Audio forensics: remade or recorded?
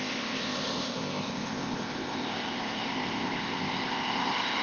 remade